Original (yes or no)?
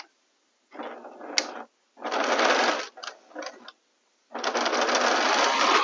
yes